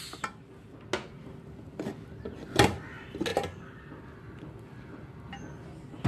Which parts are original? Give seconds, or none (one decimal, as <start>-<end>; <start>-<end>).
0.0-6.1